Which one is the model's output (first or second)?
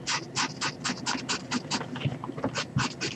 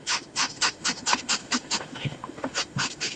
second